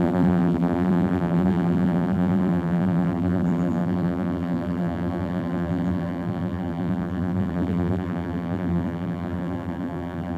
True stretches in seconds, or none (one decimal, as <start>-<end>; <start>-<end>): none